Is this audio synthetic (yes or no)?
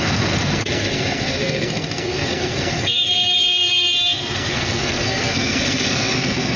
yes